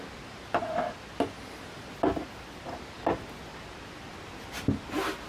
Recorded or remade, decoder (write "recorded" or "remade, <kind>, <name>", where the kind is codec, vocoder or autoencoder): recorded